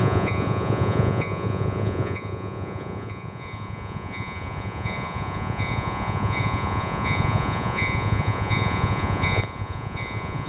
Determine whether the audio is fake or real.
fake